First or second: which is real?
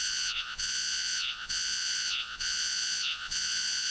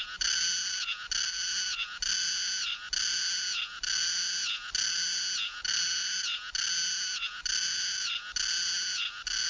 second